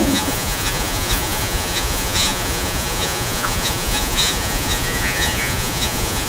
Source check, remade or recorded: remade